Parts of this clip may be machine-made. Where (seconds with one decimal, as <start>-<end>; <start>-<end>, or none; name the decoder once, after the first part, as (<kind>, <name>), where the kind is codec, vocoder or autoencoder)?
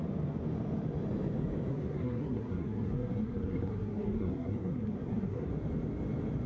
1.7-5.5 (codec, SNAC)